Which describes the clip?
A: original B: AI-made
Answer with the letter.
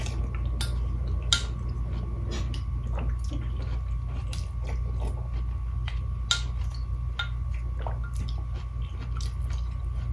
A